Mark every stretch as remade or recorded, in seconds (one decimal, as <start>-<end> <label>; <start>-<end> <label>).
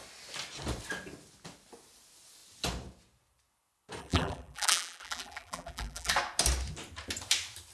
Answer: 0.0-4.0 recorded; 4.0-6.1 remade; 6.1-7.7 recorded